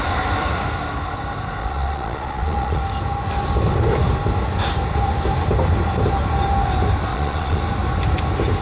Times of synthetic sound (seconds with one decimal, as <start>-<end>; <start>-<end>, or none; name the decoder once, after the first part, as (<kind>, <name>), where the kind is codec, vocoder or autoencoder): 1.6-2.8 (vocoder, Vocos); 7.1-7.6